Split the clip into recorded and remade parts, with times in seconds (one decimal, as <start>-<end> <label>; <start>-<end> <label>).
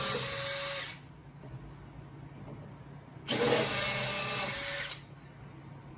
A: 0.0-6.0 recorded